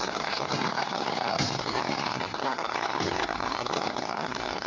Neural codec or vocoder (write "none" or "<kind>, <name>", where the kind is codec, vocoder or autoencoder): codec, SNAC